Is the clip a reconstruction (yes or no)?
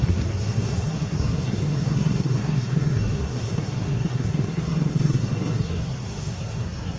yes